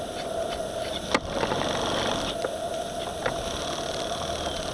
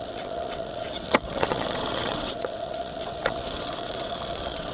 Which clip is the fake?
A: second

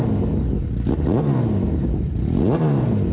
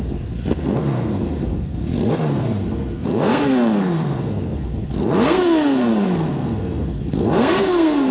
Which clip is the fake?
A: second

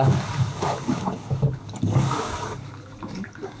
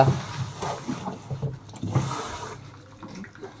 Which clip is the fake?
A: first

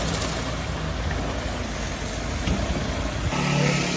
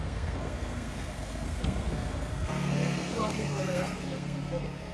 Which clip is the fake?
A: second